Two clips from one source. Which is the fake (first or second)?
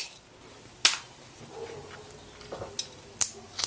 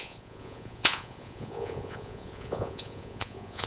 second